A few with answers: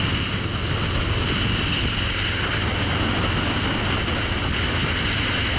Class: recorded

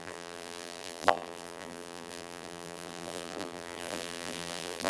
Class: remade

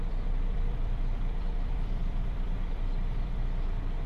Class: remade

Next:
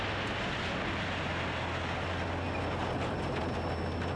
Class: recorded